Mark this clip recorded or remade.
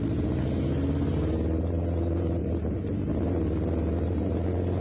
recorded